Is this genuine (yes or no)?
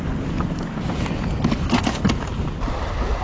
yes